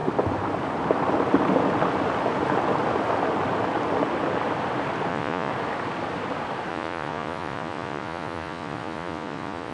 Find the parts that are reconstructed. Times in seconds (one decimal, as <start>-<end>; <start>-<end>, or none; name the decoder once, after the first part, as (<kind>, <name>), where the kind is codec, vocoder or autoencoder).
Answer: 5.1-5.5 (vocoder, Vocos); 6.7-9.7